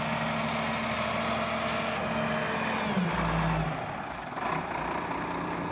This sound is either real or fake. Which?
real